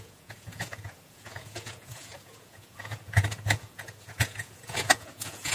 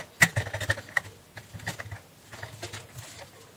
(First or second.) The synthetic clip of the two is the first